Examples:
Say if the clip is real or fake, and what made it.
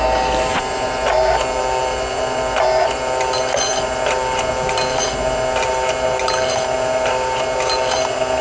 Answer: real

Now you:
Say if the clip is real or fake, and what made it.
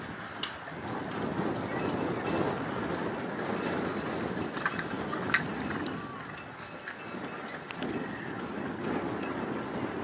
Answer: real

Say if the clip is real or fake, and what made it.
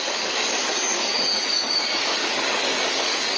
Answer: fake, codec, DAC